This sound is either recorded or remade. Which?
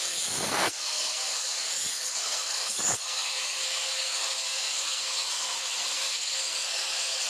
remade